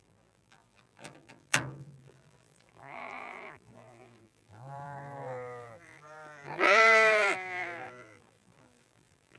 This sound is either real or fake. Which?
fake